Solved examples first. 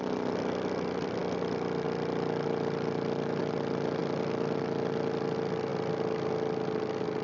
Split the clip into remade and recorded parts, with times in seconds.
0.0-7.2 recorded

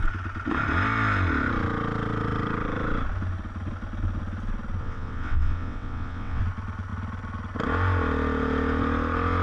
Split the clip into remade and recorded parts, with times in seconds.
0.0-4.8 recorded; 4.8-6.4 remade; 6.4-9.4 recorded

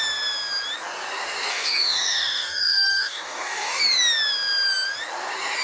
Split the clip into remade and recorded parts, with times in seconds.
0.0-1.5 recorded; 1.5-3.8 remade; 3.8-5.6 recorded

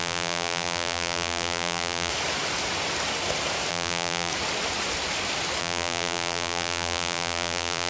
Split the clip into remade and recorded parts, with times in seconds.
0.0-2.1 remade; 2.1-3.7 recorded; 3.7-4.3 remade; 4.3-5.6 recorded; 5.6-7.9 remade

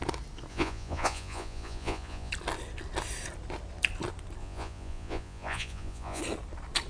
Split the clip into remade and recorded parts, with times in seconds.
0.0-0.5 recorded; 0.5-2.3 remade; 2.3-4.4 recorded; 4.4-6.2 remade; 6.2-6.9 recorded

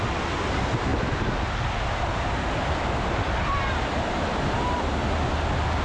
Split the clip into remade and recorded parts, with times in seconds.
0.0-5.8 recorded

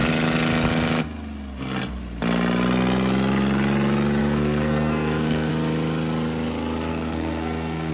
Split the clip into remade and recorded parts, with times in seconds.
0.0-4.2 recorded; 4.2-5.5 remade; 5.5-6.9 recorded; 6.9-7.9 remade